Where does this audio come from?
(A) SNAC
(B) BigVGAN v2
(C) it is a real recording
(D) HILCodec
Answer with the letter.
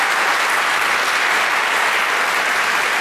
C